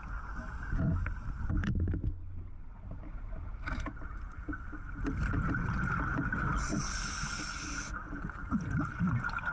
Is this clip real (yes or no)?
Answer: yes